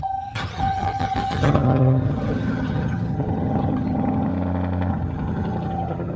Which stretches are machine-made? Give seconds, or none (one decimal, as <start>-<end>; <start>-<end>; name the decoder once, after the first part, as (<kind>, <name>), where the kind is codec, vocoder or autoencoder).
0.0-4.3 (vocoder, HiFi-GAN); 4.9-6.2